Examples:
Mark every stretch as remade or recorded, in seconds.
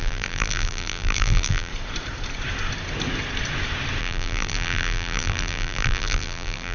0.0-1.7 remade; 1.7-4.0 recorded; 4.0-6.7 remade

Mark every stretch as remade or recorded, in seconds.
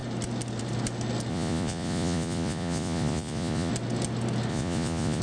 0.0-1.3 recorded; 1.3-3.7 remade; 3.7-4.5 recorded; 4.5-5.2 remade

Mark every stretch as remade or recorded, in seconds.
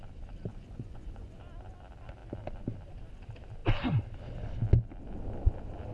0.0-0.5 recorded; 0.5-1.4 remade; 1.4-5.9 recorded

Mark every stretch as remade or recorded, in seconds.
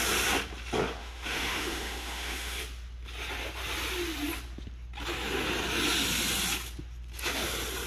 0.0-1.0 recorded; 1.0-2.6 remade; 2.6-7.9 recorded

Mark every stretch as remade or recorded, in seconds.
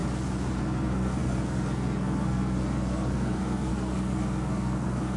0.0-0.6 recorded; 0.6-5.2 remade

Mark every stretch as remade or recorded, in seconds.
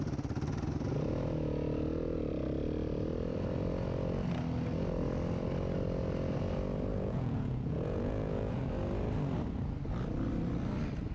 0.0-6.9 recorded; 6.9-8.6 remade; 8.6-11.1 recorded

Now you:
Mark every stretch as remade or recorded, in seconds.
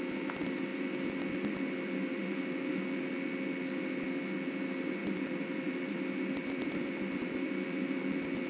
0.0-0.7 recorded; 0.7-3.1 remade; 3.1-5.0 recorded; 5.0-8.5 remade